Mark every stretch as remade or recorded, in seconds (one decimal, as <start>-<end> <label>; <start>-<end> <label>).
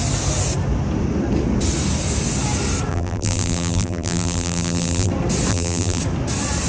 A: 0.0-2.9 recorded; 2.9-5.1 remade; 5.1-5.5 recorded; 5.5-6.0 remade; 6.0-6.7 recorded